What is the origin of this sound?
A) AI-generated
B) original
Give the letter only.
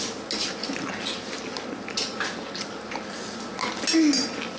B